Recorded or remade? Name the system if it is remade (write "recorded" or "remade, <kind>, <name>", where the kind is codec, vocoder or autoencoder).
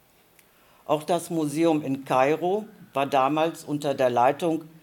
recorded